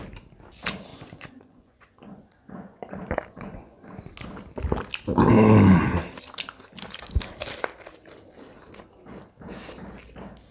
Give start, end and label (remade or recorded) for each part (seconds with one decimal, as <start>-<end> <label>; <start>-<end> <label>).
0.0-0.9 recorded; 0.9-4.1 remade; 4.1-10.5 recorded